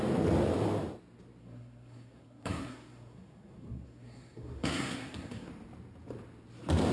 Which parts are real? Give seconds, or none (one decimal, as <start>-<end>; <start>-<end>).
0.0-1.4; 5.5-6.9